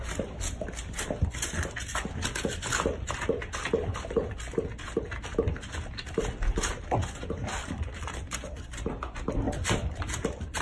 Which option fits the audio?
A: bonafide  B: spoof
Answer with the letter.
A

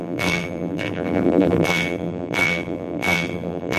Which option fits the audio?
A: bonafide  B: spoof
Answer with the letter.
B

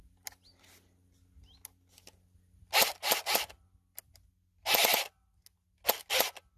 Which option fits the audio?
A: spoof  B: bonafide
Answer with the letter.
B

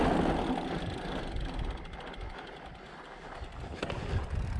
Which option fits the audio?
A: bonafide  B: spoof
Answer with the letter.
A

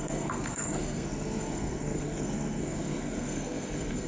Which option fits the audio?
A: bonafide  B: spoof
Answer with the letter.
B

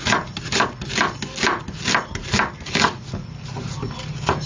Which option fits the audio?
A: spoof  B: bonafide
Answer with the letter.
B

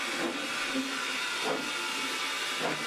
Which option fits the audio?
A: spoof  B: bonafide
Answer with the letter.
B